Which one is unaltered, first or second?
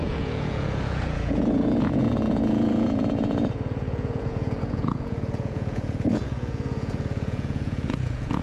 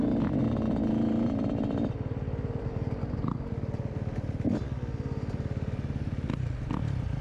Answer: second